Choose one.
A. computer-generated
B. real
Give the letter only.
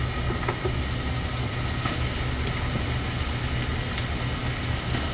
B